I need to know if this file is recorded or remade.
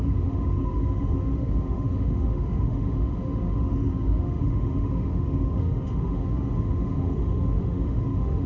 remade